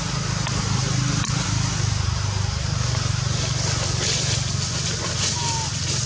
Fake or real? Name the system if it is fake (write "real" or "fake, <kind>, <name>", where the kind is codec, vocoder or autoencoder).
real